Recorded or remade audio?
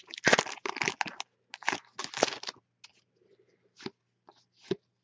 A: recorded